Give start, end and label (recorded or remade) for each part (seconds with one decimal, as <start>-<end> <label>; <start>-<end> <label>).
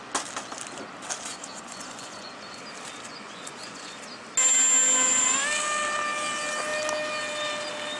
0.0-1.3 recorded; 1.3-2.6 remade; 2.6-3.1 recorded; 3.1-4.0 remade; 4.0-8.0 recorded